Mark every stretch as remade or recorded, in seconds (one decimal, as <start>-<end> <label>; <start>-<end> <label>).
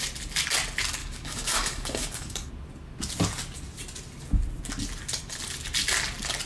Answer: 0.0-1.0 recorded; 1.0-2.5 remade; 2.5-6.5 recorded